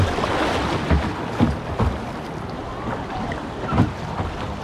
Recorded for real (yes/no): yes